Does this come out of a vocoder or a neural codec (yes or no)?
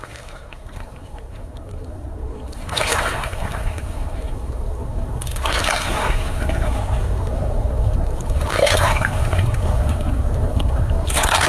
yes